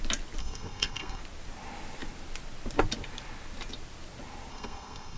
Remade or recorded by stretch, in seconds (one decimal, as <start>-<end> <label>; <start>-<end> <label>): 0.0-0.4 recorded; 0.4-1.2 remade; 1.2-4.5 recorded; 4.5-5.2 remade